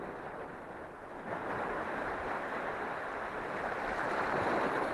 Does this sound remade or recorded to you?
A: recorded